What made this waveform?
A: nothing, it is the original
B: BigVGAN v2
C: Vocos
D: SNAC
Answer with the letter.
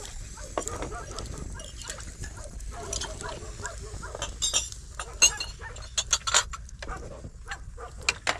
A